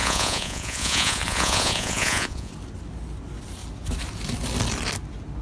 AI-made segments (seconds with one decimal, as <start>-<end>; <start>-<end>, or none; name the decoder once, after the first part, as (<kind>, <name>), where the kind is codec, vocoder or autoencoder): 0.0-2.5 (vocoder, Vocos)